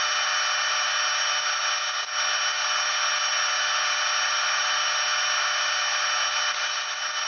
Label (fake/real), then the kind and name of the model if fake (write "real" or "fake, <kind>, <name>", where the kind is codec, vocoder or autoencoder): real